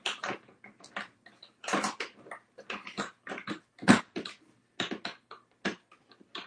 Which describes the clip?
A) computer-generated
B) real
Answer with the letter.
B